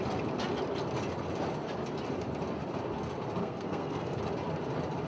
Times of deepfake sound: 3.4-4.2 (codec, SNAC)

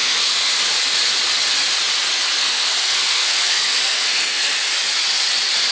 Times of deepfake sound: 0.0-0.5 (codec, SNAC); 2.4-4.7

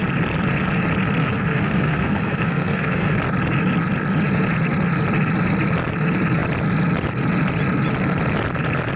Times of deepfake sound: 1.2-3.2 (codec, SNAC)

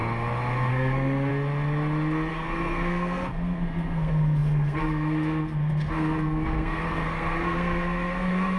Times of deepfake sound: 0.7-1.3 (codec, SNAC); 2.3-8.6

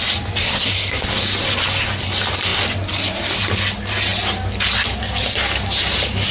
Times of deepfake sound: 0.4-1.1 (codec, SNAC)

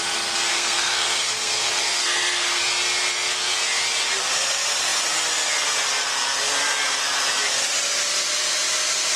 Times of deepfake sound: 0.5-2.6 (codec, SNAC)